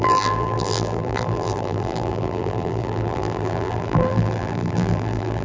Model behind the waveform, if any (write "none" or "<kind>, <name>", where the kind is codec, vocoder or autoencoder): vocoder, BigVGAN v2